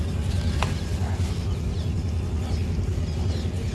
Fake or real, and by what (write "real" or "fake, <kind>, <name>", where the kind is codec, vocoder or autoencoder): real